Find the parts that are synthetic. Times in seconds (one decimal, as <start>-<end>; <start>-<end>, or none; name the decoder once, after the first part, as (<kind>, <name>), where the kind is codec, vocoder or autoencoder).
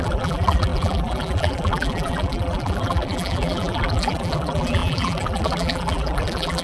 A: 0.0-6.6 (vocoder, BigVGAN v2)